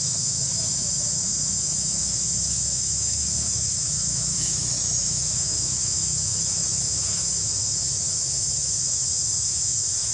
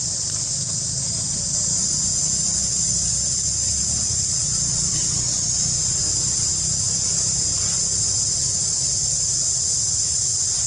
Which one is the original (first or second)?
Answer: second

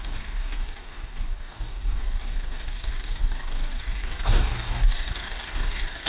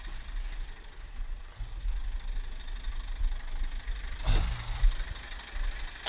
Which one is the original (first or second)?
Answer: second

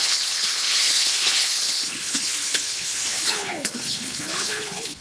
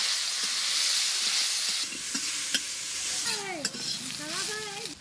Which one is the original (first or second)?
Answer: second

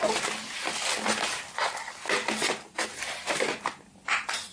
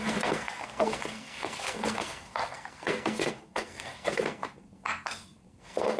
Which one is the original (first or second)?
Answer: first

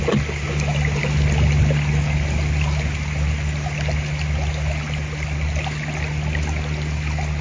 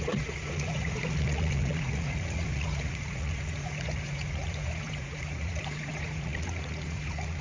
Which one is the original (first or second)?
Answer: first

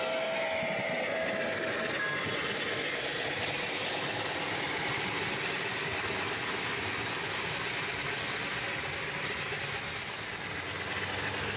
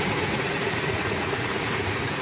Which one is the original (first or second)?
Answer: first